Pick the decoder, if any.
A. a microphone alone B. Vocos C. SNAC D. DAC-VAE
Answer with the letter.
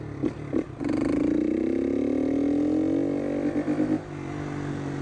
A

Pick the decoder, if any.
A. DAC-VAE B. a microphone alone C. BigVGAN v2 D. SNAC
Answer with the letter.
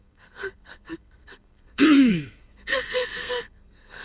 D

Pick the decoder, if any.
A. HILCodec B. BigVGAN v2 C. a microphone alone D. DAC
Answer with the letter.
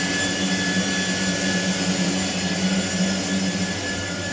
C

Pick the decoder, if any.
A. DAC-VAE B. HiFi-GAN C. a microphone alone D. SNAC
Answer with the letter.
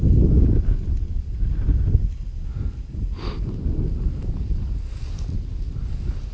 C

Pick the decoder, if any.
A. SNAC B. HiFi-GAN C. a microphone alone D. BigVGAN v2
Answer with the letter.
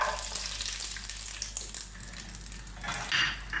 C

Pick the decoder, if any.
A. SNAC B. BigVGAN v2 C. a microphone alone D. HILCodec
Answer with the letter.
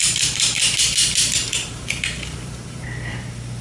B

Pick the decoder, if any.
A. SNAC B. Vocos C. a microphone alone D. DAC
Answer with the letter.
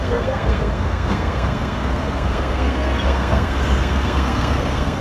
A